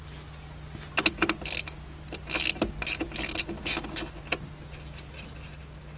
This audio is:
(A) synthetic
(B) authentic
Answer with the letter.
B